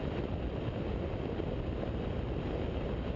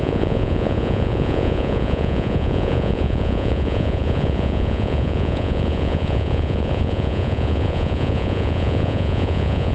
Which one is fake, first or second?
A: second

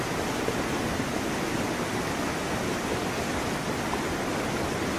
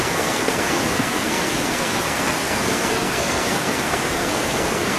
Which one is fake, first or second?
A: second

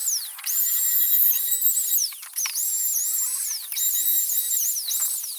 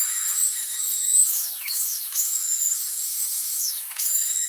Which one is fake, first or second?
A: second